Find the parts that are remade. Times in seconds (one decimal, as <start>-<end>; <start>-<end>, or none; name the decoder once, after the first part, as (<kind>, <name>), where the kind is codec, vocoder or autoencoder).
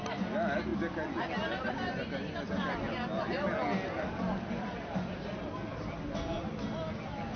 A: none